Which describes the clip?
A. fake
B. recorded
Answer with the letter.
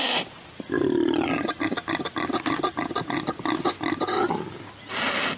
B